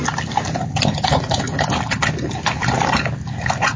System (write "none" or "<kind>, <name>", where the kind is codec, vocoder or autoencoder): none